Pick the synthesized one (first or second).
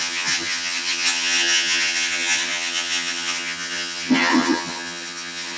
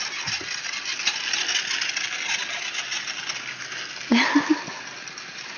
first